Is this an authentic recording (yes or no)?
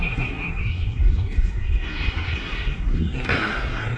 no